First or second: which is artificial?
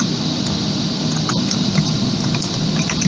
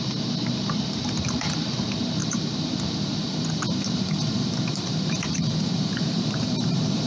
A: second